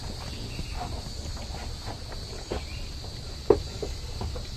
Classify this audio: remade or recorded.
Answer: recorded